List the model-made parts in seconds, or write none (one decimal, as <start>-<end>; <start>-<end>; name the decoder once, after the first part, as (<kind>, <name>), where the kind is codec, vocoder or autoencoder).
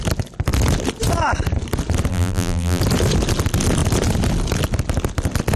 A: 2.1-2.8 (vocoder, BigVGAN v2)